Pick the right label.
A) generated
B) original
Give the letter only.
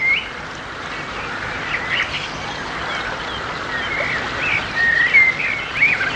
B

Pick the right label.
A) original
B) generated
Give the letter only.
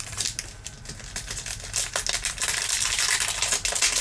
A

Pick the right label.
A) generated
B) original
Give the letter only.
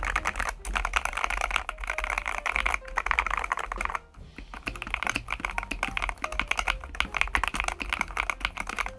B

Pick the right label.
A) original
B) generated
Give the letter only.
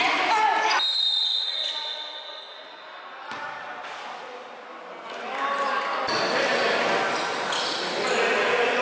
A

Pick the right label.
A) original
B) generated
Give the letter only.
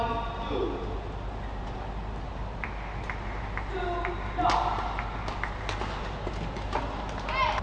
A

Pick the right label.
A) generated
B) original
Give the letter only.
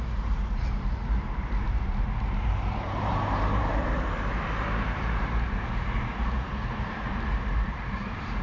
A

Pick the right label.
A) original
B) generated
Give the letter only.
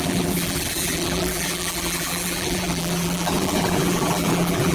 B